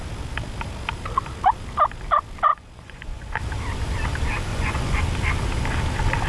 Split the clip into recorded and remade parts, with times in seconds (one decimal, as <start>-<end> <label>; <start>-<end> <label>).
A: 0.0-2.5 recorded; 2.5-3.4 remade; 3.4-4.5 recorded; 4.5-5.0 remade; 5.0-6.3 recorded

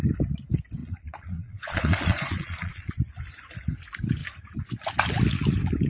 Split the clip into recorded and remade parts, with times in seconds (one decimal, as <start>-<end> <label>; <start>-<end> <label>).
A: 0.0-0.8 recorded; 0.8-2.9 remade; 2.9-5.9 recorded

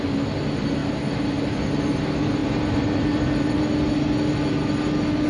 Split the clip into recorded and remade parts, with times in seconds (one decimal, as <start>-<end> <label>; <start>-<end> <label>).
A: 0.0-2.4 recorded; 2.4-3.6 remade; 3.6-5.3 recorded

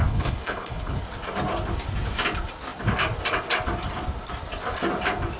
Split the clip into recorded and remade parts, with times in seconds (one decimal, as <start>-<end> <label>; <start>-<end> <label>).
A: 0.0-1.0 remade; 1.0-5.4 recorded

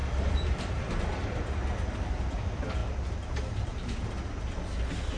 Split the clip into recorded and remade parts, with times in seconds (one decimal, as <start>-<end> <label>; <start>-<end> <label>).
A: 0.0-1.9 remade; 1.9-2.8 recorded; 2.8-4.4 remade; 4.4-5.2 recorded

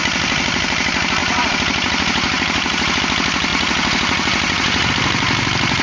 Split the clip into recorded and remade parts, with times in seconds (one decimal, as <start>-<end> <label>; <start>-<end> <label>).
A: 0.0-1.2 recorded; 1.2-3.0 remade; 3.0-3.5 recorded; 3.5-4.9 remade; 4.9-5.8 recorded

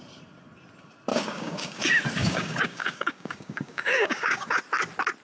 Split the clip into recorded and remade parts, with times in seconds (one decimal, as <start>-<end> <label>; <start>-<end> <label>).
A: 0.0-1.1 recorded; 1.1-1.8 remade; 1.8-2.2 recorded; 2.2-4.6 remade; 4.6-5.2 recorded

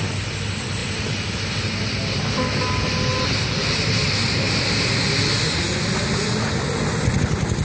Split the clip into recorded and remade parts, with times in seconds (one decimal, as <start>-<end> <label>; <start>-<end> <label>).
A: 0.0-7.6 recorded